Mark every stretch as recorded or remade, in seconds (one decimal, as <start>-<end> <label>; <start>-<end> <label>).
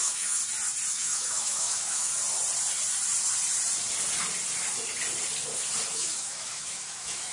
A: 0.0-0.4 remade; 0.4-0.9 recorded; 0.9-2.1 remade; 2.1-5.9 recorded; 5.9-7.3 remade